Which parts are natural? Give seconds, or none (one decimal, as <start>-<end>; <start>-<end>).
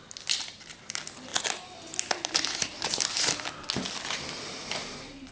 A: 0.0-5.3